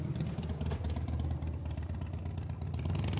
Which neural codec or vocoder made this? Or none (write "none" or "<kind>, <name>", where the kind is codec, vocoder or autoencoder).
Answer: none